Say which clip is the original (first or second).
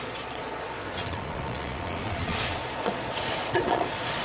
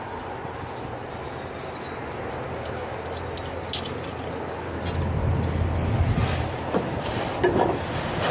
second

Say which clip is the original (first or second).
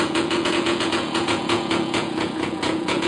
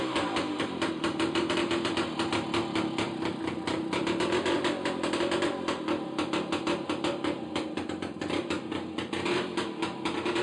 second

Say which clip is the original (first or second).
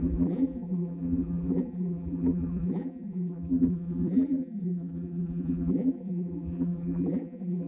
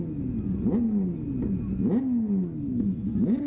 second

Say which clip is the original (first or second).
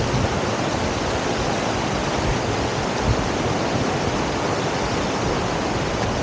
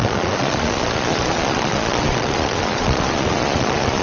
first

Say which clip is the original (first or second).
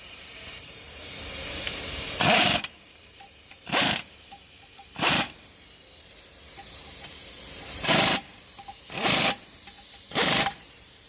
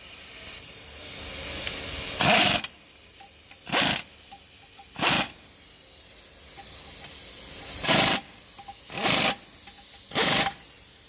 second